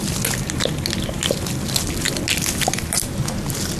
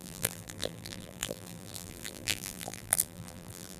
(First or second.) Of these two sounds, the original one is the first